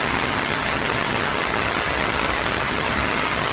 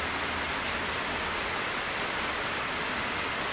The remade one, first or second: first